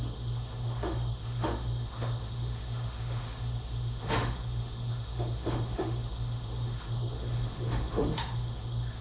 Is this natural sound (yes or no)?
no